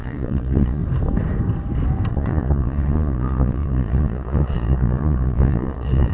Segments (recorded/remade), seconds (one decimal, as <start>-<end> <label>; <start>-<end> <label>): 0.0-0.8 remade; 0.8-2.1 recorded; 2.1-6.1 remade

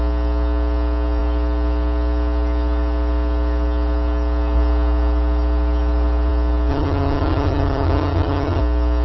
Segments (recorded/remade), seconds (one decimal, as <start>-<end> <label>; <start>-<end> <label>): 0.0-6.7 recorded; 6.7-8.6 remade; 8.6-9.0 recorded

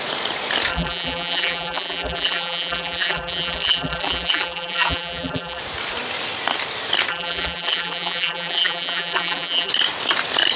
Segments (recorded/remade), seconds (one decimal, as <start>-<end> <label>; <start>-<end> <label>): 0.0-0.7 recorded; 0.7-5.6 remade; 5.6-7.1 recorded; 7.1-9.7 remade; 9.7-10.6 recorded

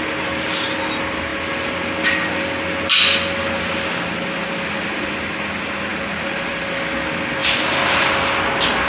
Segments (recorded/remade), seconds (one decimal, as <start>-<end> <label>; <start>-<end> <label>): 0.0-8.9 recorded

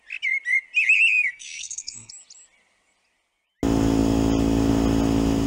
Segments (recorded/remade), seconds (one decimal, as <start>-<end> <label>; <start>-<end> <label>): 0.0-1.2 recorded; 1.2-2.1 remade; 2.1-5.5 recorded